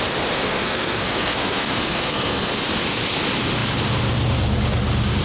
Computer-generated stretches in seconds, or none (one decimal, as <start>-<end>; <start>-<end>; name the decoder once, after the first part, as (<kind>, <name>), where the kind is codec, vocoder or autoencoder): 0.5-2.6 (codec, SNAC)